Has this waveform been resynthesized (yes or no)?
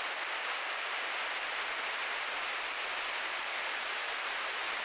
no